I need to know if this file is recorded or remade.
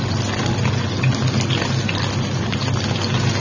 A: recorded